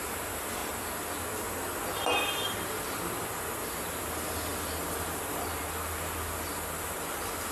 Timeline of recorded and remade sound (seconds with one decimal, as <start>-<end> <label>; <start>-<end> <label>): 0.0-0.6 remade; 0.6-1.4 recorded; 1.4-7.5 remade